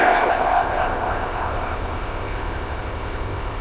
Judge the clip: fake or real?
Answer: fake